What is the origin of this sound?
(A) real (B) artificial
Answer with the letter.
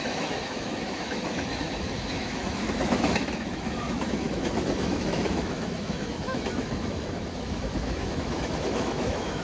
B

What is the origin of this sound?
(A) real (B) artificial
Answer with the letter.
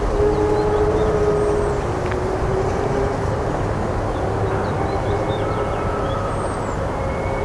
A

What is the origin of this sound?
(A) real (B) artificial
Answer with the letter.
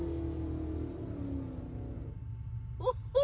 A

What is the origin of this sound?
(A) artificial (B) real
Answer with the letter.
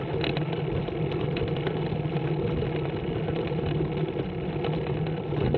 B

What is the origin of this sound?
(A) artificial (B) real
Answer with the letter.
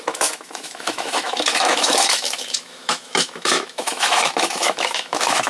A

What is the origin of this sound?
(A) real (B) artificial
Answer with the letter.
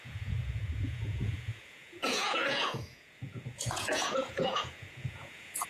B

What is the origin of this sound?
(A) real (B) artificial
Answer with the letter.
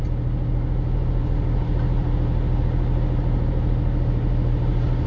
A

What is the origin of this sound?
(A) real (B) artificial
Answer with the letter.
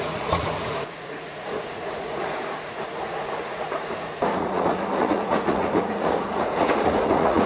B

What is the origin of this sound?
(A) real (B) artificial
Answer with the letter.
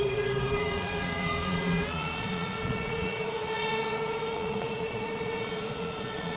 B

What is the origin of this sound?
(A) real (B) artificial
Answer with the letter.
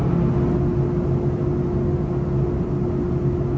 A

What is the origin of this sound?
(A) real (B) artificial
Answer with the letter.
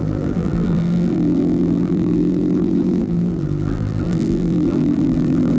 B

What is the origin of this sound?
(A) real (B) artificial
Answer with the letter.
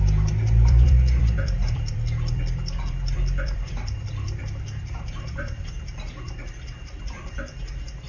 B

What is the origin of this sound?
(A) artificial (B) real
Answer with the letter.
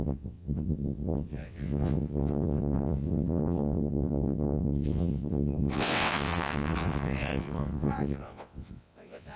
A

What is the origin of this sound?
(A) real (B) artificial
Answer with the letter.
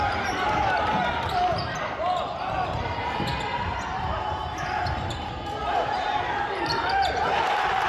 B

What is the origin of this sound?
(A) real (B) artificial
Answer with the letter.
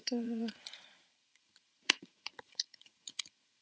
B